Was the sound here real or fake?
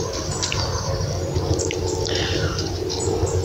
real